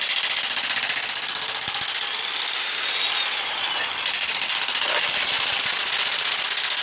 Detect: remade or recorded recorded